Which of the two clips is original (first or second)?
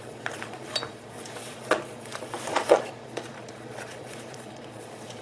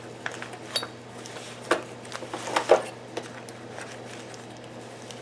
second